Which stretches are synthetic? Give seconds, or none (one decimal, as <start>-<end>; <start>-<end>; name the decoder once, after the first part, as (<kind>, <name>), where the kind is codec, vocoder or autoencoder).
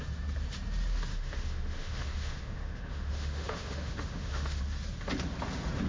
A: 1.1-4.6 (autoencoder, DAC-VAE)